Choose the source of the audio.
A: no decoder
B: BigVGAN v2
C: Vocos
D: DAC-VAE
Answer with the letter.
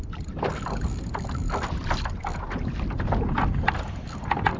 A